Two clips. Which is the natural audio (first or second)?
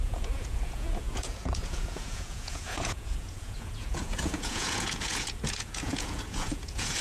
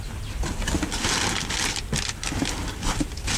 second